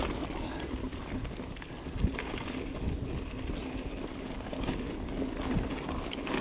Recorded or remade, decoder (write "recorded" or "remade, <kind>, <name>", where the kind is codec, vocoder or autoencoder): recorded